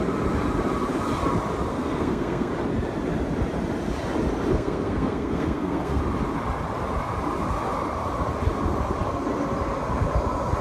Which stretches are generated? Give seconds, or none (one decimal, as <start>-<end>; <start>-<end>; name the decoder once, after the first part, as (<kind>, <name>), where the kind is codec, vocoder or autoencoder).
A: 1.7-2.5 (codec, SNAC); 4.5-6.0